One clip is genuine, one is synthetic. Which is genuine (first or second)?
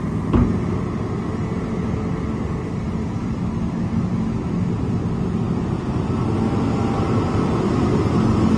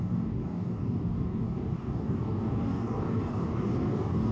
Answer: first